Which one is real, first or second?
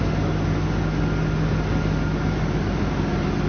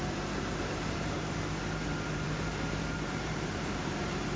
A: first